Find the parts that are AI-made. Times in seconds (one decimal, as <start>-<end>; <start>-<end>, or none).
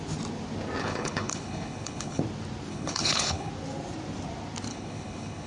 0.8-2.2; 2.7-3.5; 4.7-5.5